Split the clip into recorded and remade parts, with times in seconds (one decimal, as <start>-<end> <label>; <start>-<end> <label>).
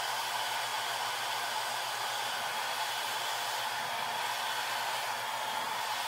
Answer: 0.0-3.3 remade; 3.3-5.5 recorded; 5.5-6.1 remade